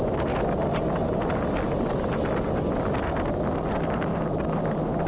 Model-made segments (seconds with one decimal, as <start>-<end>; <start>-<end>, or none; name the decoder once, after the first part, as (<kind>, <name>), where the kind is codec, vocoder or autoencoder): none